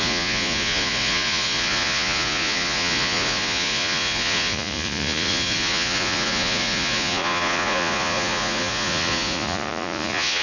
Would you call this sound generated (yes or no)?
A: yes